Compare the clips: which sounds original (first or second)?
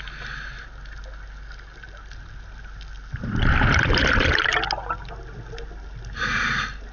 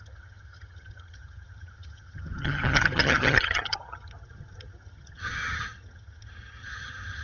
first